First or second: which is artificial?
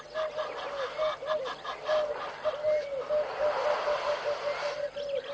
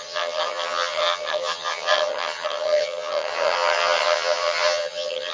second